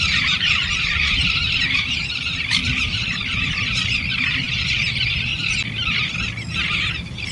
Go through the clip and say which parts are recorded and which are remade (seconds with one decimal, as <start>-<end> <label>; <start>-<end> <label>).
0.0-5.3 remade; 5.3-6.8 recorded; 6.8-7.3 remade